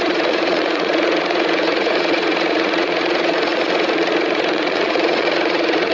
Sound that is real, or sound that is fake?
fake